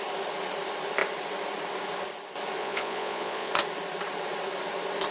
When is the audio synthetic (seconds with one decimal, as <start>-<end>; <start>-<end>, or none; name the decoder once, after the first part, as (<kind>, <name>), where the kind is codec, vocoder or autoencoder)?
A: 2.6-3.5 (vocoder, Vocos)